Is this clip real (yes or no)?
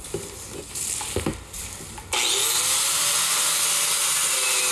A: yes